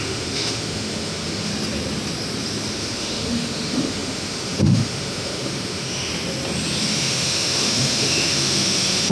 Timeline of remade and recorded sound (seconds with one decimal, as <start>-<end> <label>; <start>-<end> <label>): 0.0-1.5 remade; 1.5-2.7 recorded; 2.7-6.1 remade; 6.1-6.8 recorded; 6.8-9.1 remade